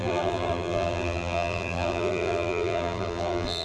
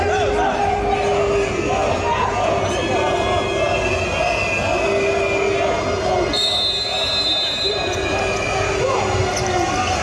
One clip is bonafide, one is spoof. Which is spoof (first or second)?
first